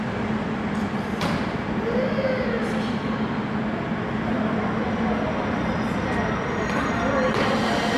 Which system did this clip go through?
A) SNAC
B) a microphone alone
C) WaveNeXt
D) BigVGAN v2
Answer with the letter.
B